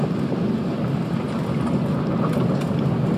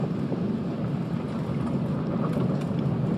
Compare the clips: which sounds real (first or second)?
first